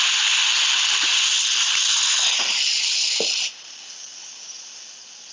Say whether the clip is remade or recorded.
recorded